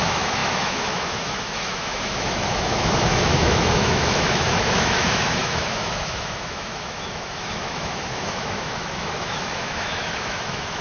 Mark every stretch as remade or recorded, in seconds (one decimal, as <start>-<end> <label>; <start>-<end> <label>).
0.0-10.8 remade